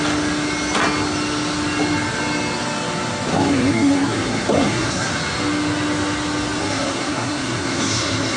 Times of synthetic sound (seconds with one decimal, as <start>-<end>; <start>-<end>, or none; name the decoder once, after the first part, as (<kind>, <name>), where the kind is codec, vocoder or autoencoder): 3.3-5.1 (codec, SNAC); 6.6-8.4